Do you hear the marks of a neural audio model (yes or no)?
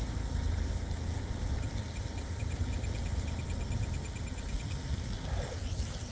no